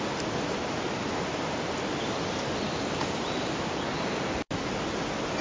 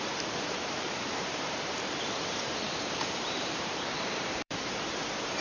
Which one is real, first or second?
first